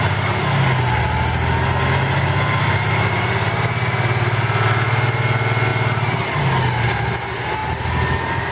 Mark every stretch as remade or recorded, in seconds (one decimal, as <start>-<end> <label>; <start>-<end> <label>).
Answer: 0.0-8.5 recorded